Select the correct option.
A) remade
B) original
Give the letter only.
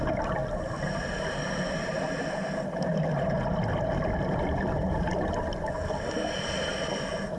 B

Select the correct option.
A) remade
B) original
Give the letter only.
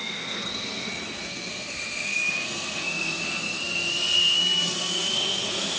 A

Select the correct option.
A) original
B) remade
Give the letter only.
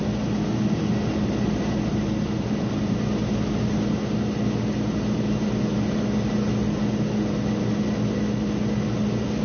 A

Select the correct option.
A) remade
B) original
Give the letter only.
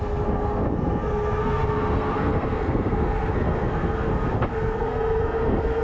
A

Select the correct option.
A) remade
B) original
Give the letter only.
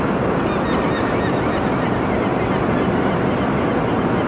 B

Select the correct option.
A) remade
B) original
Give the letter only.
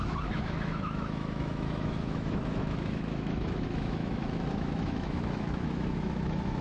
A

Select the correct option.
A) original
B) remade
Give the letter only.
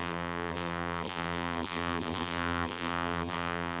B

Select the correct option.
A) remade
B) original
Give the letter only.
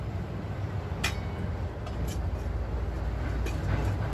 B